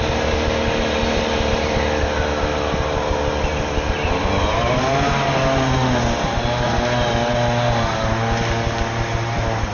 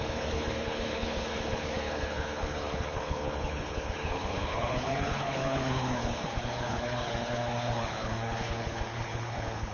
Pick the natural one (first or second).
first